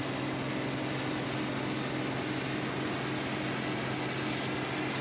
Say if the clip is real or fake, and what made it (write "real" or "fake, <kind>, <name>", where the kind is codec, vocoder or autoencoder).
real